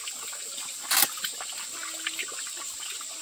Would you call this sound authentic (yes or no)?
yes